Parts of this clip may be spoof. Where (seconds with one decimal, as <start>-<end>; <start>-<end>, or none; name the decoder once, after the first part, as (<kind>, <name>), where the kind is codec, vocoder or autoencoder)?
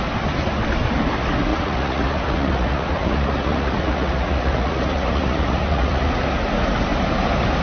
1.5-6.1 (vocoder, Vocos)